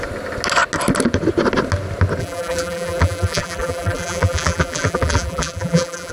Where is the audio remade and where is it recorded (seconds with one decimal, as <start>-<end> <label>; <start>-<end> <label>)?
0.0-2.2 recorded; 2.2-6.1 remade